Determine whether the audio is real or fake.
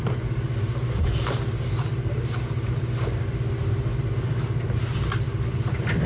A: real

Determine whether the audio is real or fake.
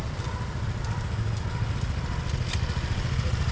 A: real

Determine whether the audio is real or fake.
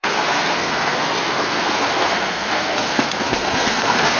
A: fake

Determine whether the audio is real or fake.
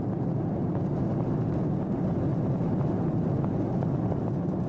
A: real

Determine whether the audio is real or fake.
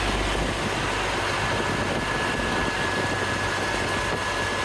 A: real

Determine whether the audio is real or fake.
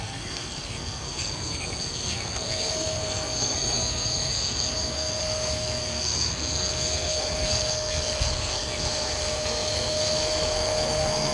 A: fake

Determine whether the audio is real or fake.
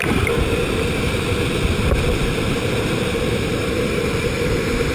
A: real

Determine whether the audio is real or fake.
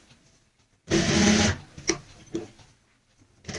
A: real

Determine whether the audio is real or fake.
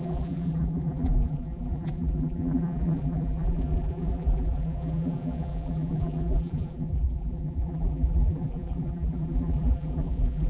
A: fake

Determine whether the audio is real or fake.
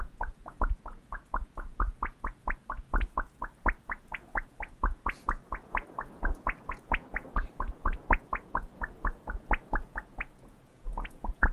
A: fake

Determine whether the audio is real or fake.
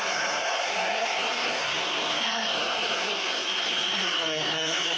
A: fake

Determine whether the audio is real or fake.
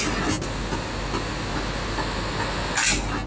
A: real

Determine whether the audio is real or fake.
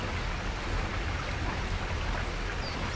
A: real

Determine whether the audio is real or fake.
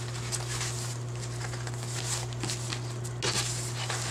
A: real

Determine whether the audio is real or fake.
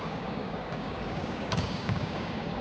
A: fake